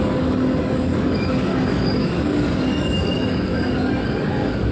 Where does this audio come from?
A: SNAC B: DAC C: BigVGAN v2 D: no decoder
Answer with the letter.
B